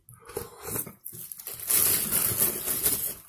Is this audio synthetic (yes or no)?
no